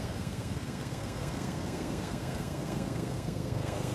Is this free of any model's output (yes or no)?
no